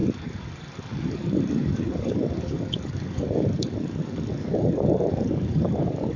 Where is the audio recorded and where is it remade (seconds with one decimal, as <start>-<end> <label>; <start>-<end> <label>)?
0.0-6.2 remade